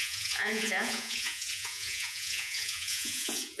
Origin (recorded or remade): remade